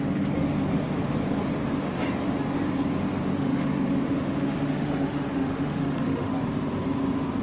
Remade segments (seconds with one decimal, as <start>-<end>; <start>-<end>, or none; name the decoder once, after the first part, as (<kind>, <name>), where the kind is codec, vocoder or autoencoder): 3.3-6.3 (autoencoder, DAC-VAE)